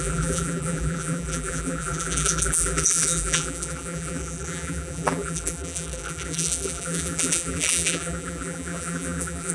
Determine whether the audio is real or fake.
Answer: fake